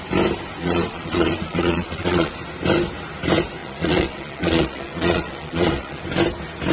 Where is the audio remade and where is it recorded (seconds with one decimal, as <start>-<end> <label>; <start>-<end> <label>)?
0.0-0.6 recorded; 0.6-2.3 remade; 2.3-3.6 recorded; 3.6-6.0 remade; 6.0-6.7 recorded